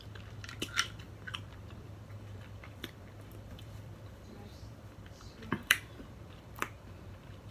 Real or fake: fake